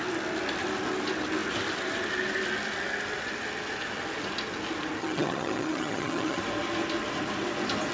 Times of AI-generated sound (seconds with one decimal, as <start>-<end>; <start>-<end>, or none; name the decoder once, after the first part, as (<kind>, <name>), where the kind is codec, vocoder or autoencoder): 5.0-6.4 (vocoder, HiFi-GAN)

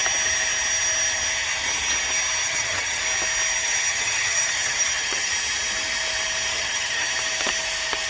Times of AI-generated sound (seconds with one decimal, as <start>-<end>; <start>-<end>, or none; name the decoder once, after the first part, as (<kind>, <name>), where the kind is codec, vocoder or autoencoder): 2.4-3.0 (vocoder, HiFi-GAN); 3.6-5.3; 6.5-7.1

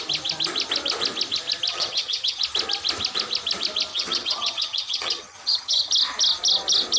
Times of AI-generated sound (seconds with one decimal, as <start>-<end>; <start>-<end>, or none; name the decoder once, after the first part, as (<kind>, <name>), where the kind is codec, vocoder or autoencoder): 1.7-2.4 (vocoder, HiFi-GAN); 3.9-5.9

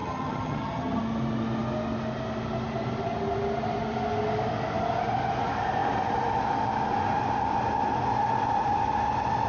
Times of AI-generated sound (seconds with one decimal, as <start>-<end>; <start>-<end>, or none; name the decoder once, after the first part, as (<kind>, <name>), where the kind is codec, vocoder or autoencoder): 0.0-1.0 (vocoder, HiFi-GAN)

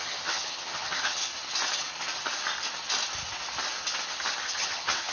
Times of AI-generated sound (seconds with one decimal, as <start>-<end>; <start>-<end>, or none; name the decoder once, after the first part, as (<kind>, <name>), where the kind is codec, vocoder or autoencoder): 0.0-1.3 (vocoder, HiFi-GAN); 4.4-5.1

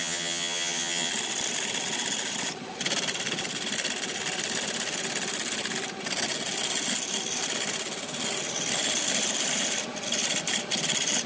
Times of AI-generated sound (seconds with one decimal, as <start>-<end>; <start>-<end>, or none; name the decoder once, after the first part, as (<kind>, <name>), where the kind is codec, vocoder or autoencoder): 0.0-1.1 (vocoder, HiFi-GAN)

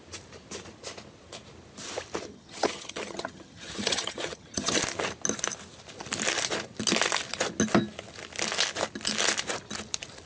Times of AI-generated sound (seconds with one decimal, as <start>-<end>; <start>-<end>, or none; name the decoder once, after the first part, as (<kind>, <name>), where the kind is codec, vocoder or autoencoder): 2.3-4.8 (vocoder, HiFi-GAN)

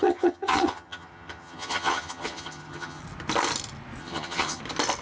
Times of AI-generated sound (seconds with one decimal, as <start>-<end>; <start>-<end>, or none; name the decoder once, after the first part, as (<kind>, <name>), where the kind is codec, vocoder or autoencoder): 0.0-3.0 (vocoder, HiFi-GAN); 4.0-4.6